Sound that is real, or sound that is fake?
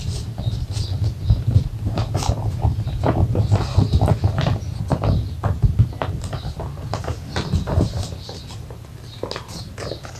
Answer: real